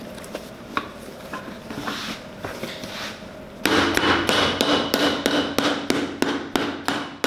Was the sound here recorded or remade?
recorded